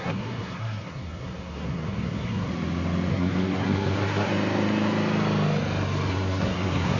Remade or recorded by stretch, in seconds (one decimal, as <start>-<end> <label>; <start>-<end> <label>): 0.0-2.5 remade; 2.5-3.1 recorded; 3.1-4.3 remade; 4.3-6.1 recorded; 6.1-7.0 remade